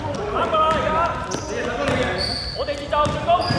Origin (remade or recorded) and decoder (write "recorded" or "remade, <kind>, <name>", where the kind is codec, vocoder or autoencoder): recorded